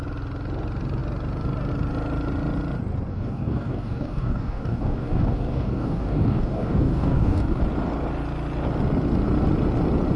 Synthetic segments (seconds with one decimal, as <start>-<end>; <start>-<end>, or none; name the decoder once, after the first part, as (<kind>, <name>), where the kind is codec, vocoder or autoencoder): 3.1-7.6 (codec, DAC)